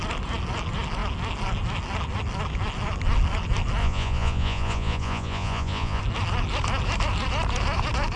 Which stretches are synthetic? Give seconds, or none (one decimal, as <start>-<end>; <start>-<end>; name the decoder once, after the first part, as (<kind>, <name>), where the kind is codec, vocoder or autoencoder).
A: 3.8-6.0 (vocoder, Vocos)